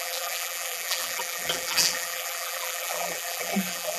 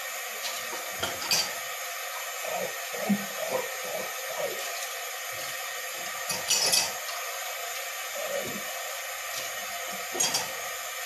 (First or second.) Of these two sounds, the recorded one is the second